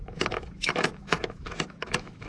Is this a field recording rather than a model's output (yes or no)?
no